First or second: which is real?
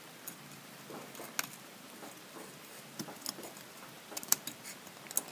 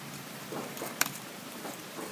first